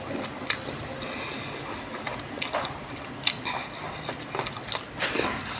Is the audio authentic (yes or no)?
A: yes